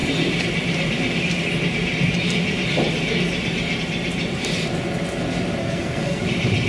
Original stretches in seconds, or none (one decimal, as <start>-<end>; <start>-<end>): 0.0-5.6; 6.2-6.7